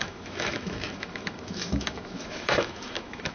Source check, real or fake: fake